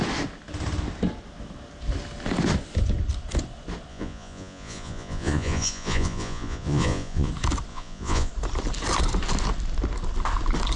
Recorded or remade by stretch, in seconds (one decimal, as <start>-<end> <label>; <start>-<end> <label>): 0.0-3.9 recorded; 3.9-7.3 remade; 7.3-7.7 recorded; 7.7-8.3 remade; 8.3-10.8 recorded